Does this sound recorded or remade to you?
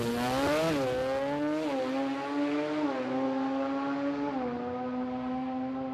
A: recorded